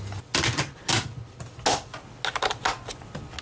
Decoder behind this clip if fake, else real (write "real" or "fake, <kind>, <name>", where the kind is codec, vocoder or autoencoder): real